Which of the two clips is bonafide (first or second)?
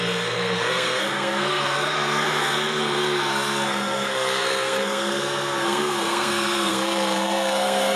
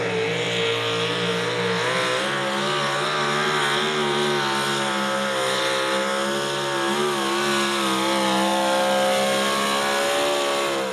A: second